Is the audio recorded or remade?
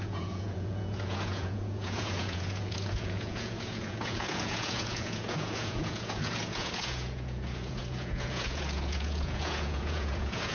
remade